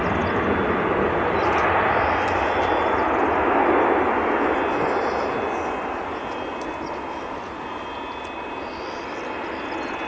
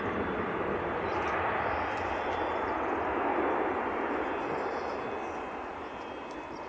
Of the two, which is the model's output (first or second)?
second